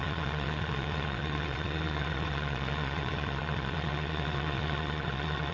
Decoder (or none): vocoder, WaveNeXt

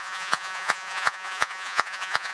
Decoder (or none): vocoder, Vocos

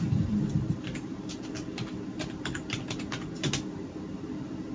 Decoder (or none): none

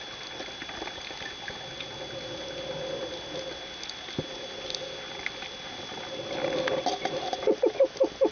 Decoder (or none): none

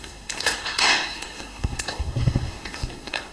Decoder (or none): codec, SNAC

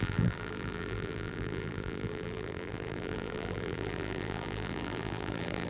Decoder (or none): vocoder, BigVGAN v2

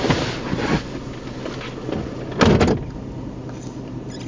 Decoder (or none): none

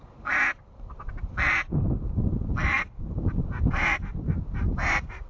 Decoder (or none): vocoder, BigVGAN v2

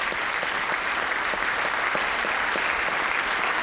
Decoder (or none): vocoder, BigVGAN v2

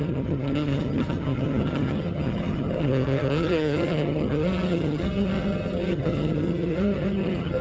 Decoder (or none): vocoder, HiFi-GAN